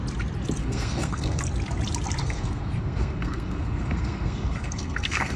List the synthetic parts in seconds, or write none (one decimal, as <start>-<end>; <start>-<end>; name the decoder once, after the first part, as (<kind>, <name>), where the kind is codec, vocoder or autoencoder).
0.6-1.4 (codec, SNAC); 2.2-5.4